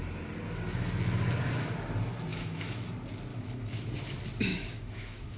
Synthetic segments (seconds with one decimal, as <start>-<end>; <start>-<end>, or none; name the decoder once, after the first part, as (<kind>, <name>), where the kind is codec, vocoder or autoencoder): 2.3-2.9 (autoencoder, DAC-VAE); 3.3-3.9; 4.5-5.4